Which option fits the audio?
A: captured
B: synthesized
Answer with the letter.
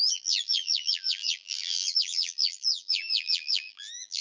B